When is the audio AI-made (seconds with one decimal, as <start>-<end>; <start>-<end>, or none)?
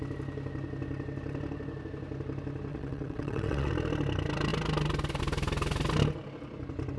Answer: 2.7-3.7